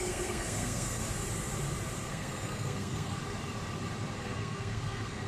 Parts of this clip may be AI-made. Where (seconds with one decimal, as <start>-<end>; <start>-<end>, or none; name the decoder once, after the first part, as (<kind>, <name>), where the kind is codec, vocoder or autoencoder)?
0.0-1.0 (codec, SNAC); 2.1-3.2; 4.2-5.3